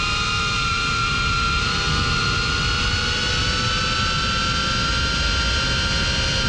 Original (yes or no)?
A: yes